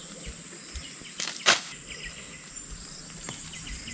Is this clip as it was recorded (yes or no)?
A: yes